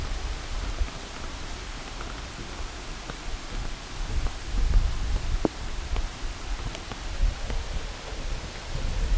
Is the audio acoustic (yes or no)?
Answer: yes